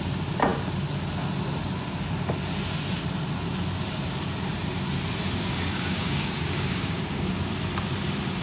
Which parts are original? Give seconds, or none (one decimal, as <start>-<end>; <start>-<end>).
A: 0.0-5.5; 7.3-8.4